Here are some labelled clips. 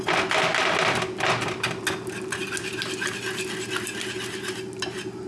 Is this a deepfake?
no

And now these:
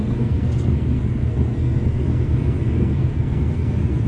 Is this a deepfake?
yes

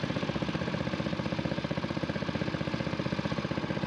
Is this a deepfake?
no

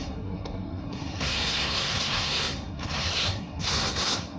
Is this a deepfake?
yes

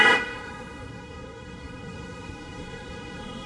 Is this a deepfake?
yes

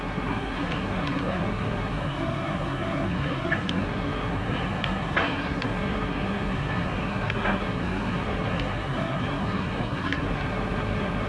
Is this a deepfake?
yes